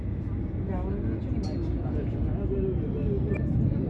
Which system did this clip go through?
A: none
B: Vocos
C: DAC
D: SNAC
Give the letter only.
A